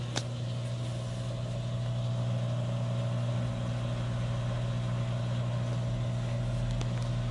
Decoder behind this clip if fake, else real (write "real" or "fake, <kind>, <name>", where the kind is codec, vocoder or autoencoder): real